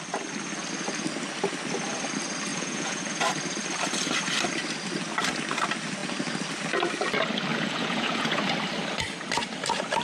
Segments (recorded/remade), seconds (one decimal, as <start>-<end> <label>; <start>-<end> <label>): 0.0-2.5 recorded; 2.5-3.0 remade; 3.0-7.5 recorded; 7.5-8.4 remade; 8.4-10.0 recorded